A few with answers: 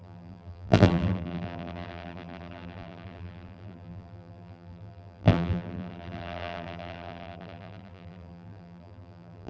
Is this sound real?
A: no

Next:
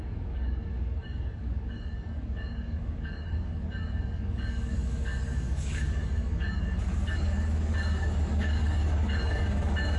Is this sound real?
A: no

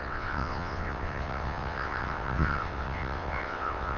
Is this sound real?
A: no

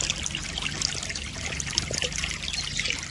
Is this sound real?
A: yes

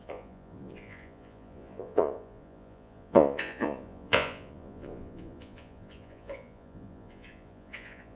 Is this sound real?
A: no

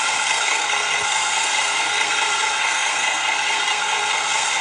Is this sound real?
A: no